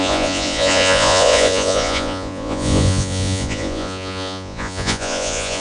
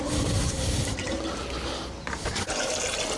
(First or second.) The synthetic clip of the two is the first